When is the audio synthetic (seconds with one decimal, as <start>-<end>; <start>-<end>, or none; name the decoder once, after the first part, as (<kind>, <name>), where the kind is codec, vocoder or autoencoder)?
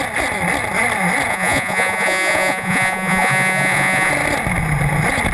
1.3-4.1 (vocoder, Vocos)